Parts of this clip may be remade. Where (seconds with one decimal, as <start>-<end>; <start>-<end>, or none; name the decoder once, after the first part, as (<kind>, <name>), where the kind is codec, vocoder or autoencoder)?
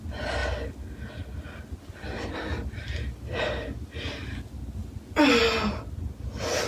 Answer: none